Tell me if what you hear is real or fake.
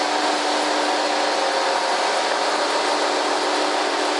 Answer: real